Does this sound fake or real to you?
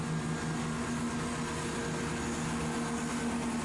real